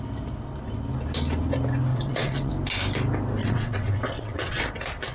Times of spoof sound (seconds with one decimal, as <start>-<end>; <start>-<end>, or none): 1.9-2.5; 3.4-4.6